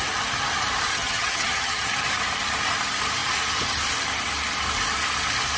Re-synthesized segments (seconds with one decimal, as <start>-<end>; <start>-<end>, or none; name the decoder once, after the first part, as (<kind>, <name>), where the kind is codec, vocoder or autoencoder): 0.9-1.9 (vocoder, HiFi-GAN)